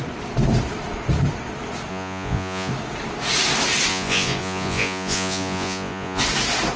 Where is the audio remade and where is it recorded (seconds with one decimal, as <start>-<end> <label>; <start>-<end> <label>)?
0.0-1.9 recorded; 1.9-2.7 remade; 2.7-3.9 recorded; 3.9-6.2 remade; 6.2-6.8 recorded